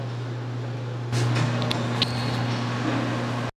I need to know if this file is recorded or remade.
recorded